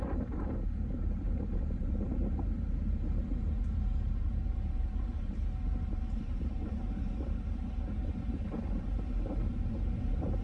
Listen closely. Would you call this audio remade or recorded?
remade